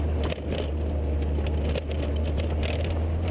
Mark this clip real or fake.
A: real